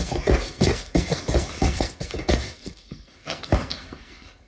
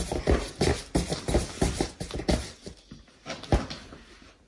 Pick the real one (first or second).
second